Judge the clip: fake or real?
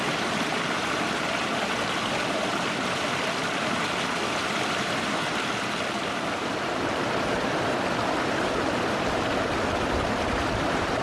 real